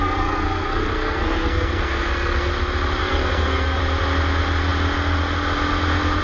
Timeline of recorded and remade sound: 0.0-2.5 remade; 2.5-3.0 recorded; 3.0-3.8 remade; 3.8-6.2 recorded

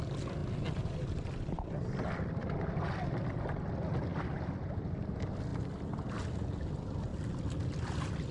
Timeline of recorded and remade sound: 0.0-8.3 recorded

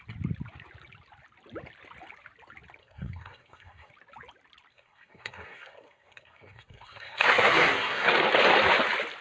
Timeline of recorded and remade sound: 0.0-2.8 recorded; 2.8-3.9 remade; 3.9-4.7 recorded; 4.7-8.1 remade; 8.1-9.2 recorded

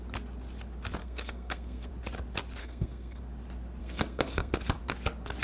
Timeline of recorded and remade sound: 0.0-1.0 recorded; 1.0-1.9 remade; 1.9-2.6 recorded; 2.6-3.2 remade; 3.2-3.8 recorded; 3.8-4.5 remade; 4.5-5.4 recorded

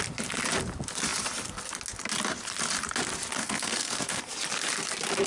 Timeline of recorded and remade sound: 0.0-3.4 recorded; 3.4-4.2 remade; 4.2-5.3 recorded

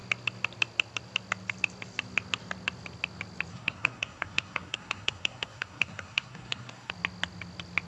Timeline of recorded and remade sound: 0.0-3.5 recorded; 3.5-6.9 remade; 6.9-7.9 recorded

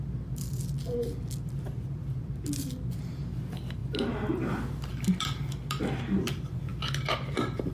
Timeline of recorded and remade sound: 0.0-7.7 recorded

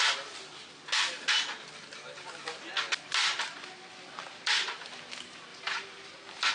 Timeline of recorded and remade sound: 0.0-6.5 recorded